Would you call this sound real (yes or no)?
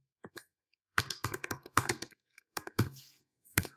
no